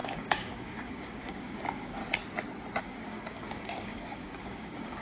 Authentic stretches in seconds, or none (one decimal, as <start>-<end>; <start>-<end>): 2.0-2.8